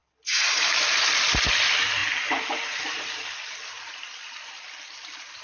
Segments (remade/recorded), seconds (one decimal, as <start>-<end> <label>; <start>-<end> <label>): 0.0-5.4 recorded